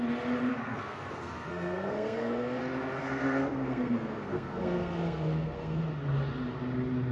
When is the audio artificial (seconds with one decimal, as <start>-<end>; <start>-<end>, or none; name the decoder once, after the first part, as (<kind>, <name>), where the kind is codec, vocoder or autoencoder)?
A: 0.5-2.6 (codec, SNAC); 3.0-5.8